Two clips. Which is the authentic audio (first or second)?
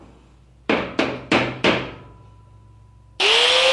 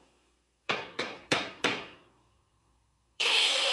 first